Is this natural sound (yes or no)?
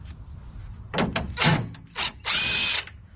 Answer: yes